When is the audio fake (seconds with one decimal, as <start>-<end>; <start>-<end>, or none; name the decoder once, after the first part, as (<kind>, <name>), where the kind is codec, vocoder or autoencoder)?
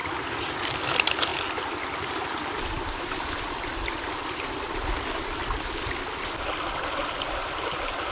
none